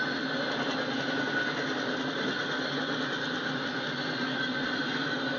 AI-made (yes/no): no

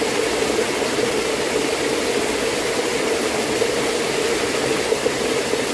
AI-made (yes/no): no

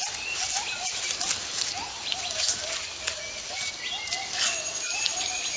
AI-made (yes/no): no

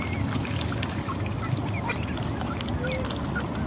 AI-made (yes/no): no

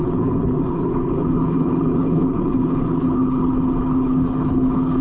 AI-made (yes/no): yes